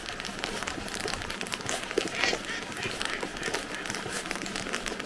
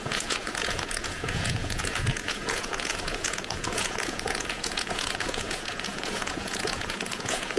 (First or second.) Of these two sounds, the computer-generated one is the second